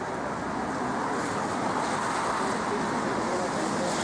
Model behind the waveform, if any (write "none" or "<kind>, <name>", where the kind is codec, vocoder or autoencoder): none